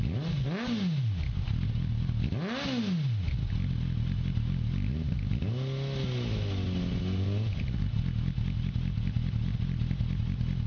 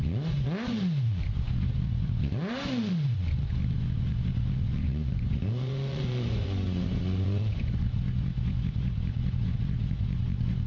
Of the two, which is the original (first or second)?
first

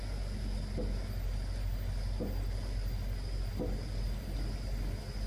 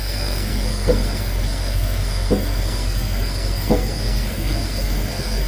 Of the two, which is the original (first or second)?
first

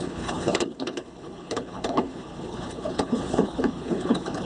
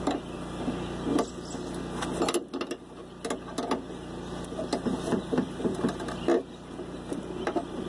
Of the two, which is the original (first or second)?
second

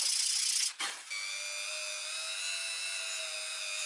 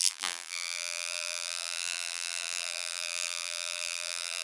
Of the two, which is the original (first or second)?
first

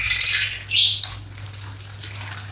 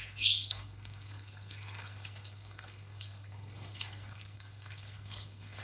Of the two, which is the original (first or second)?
first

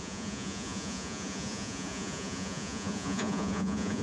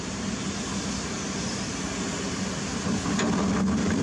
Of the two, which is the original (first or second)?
second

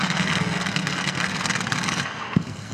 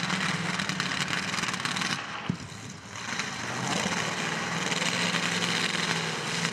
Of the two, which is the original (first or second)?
second